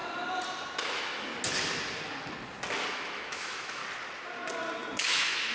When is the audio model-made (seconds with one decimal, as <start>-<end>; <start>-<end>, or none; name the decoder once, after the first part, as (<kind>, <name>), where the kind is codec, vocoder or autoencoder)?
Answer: 0.8-1.3 (autoencoder, DAC-VAE); 2.9-3.8; 5.0-5.5